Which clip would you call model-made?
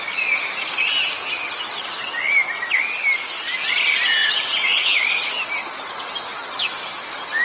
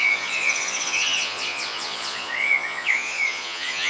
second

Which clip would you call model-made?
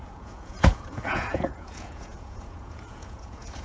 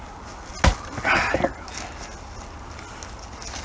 first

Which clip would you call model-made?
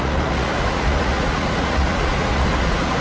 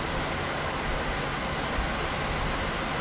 first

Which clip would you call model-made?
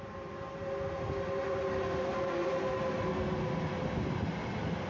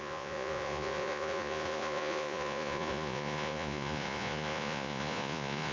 second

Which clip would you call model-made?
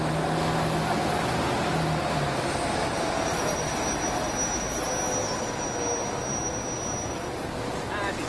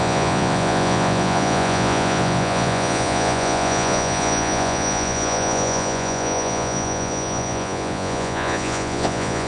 second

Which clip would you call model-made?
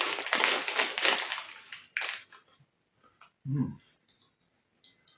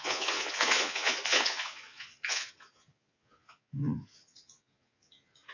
second